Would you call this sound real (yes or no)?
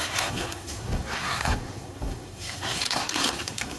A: no